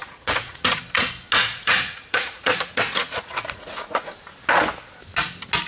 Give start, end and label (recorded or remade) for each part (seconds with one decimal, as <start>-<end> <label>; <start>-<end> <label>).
0.0-0.8 remade; 0.8-1.4 recorded; 1.4-4.1 remade; 4.1-5.7 recorded